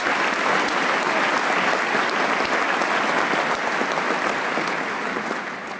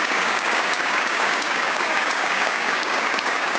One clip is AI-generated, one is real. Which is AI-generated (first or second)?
second